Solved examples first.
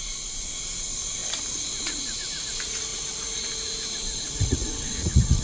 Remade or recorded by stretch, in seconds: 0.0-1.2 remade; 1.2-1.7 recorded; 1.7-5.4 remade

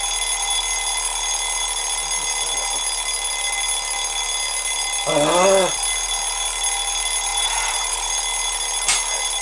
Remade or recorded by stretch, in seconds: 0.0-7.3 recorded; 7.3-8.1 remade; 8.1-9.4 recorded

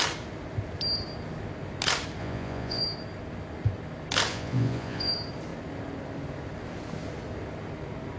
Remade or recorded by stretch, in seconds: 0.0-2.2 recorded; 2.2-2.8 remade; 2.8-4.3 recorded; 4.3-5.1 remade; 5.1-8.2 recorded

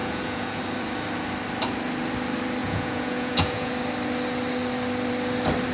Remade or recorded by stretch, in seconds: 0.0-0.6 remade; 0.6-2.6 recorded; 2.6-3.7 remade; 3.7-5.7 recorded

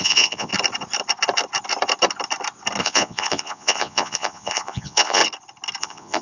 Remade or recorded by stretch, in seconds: 0.0-0.5 remade; 0.5-2.8 recorded; 2.8-5.2 remade; 5.2-5.8 recorded; 5.8-6.2 remade

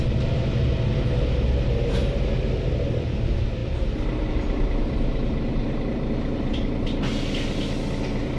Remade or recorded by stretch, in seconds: 0.0-8.4 recorded